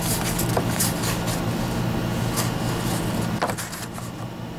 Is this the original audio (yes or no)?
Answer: yes